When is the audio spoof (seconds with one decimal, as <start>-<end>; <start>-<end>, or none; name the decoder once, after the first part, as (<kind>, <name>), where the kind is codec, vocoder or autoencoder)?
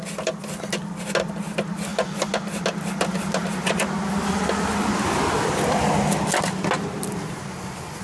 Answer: none